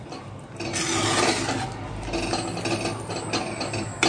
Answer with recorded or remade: recorded